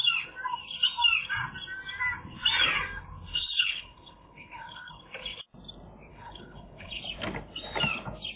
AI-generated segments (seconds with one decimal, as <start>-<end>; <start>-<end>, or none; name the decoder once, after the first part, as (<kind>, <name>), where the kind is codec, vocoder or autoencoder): 3.3-5.0 (codec, HILCodec); 6.1-7.0